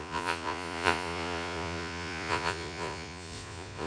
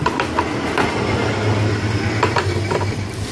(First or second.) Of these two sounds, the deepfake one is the first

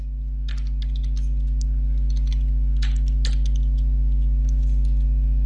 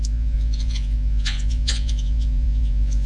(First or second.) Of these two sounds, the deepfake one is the second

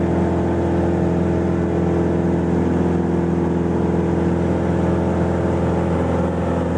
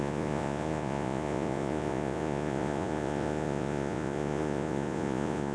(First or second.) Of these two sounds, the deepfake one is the second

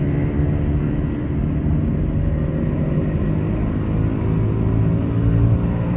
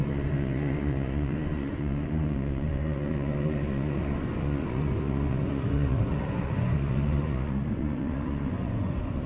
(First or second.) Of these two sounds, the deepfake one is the second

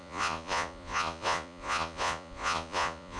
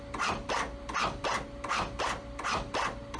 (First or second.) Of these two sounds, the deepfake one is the first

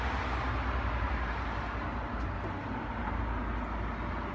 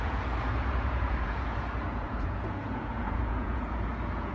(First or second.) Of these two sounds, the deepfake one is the second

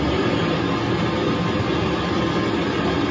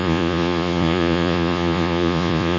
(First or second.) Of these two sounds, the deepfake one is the second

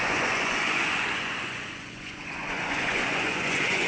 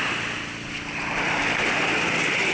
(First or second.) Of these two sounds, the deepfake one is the first